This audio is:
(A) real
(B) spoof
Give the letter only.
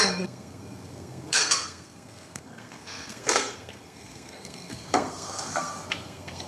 B